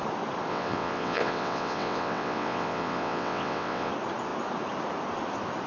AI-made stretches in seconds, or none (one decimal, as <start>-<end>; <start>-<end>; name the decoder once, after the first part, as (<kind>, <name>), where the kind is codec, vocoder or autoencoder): 0.5-3.9 (vocoder, WaveNeXt)